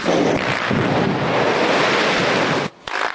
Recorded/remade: recorded